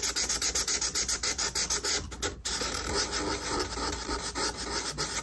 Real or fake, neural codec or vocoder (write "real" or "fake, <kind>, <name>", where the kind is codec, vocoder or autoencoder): real